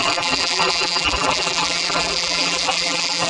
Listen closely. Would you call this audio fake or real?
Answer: fake